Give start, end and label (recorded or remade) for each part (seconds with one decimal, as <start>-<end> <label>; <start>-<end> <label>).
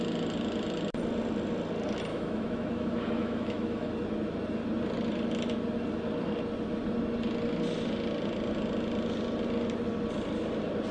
0.0-2.1 recorded; 2.1-3.9 remade; 3.9-10.9 recorded